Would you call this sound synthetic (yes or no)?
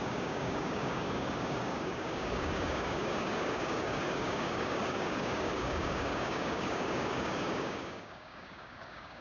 yes